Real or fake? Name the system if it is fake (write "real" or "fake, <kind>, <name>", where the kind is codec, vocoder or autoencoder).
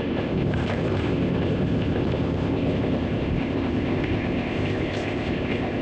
fake, codec, ZipCodec